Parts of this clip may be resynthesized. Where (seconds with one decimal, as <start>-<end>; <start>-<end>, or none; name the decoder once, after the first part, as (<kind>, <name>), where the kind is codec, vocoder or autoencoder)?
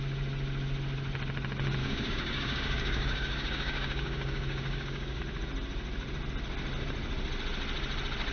1.8-5.2 (codec, DAC)